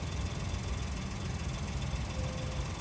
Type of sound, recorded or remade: recorded